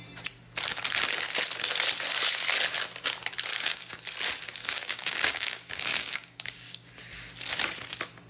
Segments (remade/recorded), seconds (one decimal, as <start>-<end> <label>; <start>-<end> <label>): 0.0-3.5 recorded; 3.5-4.0 remade; 4.0-4.6 recorded; 4.6-6.9 remade; 6.9-8.3 recorded